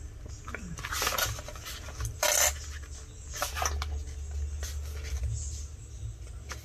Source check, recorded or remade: recorded